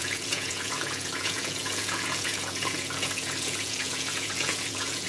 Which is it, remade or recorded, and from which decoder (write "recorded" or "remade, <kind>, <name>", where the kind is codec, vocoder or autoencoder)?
remade, vocoder, Vocos